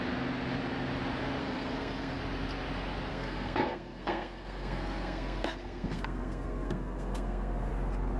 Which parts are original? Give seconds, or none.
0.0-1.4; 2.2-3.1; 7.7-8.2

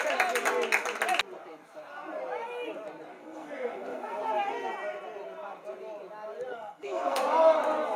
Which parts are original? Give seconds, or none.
0.0-3.1; 4.2-6.5; 7.2-8.0